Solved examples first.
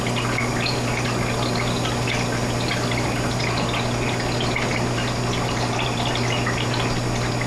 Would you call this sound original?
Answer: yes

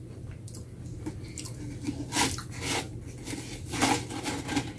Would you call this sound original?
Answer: yes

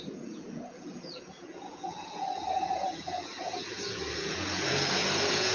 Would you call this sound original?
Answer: no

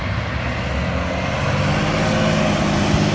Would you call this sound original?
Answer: yes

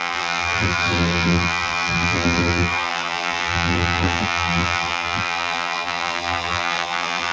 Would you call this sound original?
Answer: no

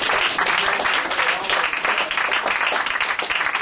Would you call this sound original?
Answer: yes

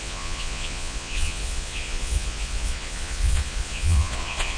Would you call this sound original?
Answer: no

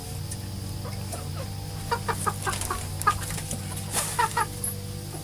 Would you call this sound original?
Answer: yes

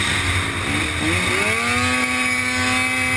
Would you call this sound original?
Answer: yes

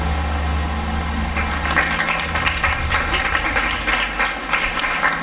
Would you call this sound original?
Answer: yes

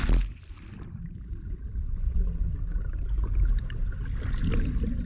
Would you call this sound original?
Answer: yes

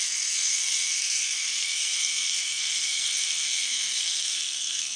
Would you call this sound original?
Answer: no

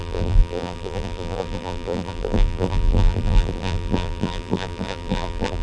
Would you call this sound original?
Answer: no